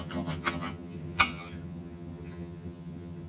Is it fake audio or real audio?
fake